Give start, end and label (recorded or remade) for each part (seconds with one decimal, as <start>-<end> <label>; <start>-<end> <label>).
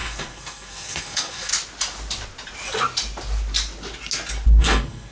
0.0-1.5 remade; 1.5-4.6 recorded; 4.6-5.1 remade